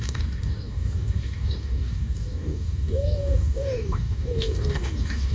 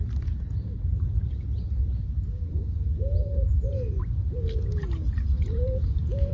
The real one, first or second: second